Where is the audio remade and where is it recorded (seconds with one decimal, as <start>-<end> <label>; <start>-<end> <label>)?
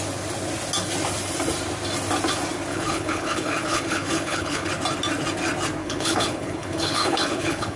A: 0.0-2.7 recorded; 2.7-4.7 remade; 4.7-5.8 recorded; 5.8-7.8 remade